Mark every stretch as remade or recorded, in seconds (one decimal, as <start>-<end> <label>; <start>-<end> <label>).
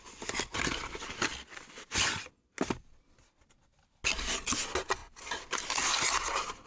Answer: 0.0-6.7 recorded